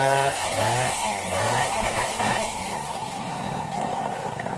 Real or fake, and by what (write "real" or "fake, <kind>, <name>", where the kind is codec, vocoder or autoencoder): fake, codec, SNAC